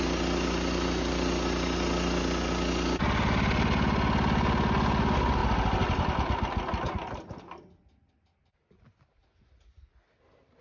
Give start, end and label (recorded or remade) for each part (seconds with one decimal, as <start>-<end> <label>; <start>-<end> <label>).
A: 0.0-10.6 recorded